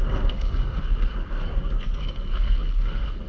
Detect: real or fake fake